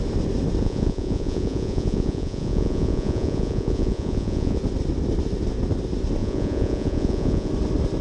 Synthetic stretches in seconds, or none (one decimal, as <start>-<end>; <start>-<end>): 0.6-4.6; 6.2-7.5